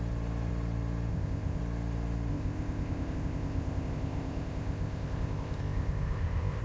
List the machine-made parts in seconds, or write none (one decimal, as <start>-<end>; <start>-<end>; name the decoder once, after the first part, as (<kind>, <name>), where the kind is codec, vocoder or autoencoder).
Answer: 1.1-1.6 (codec, ZipCodec); 2.3-6.6